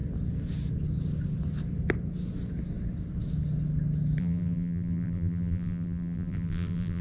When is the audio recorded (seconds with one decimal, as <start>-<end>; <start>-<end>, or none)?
0.0-4.2